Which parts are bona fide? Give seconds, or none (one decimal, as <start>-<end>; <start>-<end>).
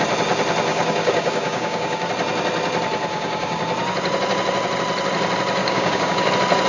0.0-0.7; 2.1-3.1; 3.6-5.6; 6.3-6.7